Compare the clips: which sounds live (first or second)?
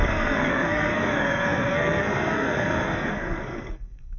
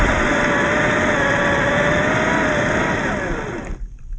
second